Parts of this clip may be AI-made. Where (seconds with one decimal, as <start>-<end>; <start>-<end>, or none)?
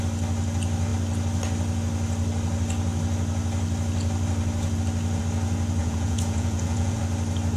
5.8-7.0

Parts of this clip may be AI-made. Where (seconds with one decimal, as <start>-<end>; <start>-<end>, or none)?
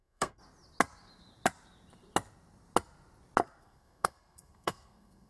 0.0-0.4; 3.6-5.3